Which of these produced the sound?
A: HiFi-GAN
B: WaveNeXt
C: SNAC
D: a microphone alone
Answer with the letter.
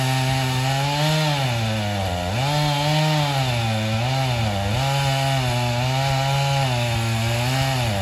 D